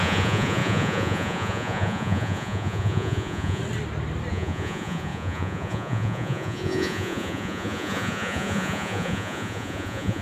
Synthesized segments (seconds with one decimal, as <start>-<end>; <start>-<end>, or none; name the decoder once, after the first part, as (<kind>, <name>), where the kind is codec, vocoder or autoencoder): 0.0-3.6 (vocoder, Vocos); 4.3-10.2